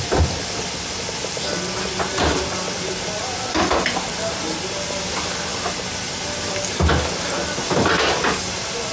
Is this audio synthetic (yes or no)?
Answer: no